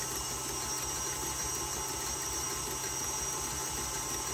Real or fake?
real